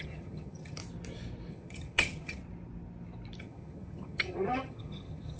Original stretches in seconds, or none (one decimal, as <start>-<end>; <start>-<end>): 0.8-1.5; 2.4-3.4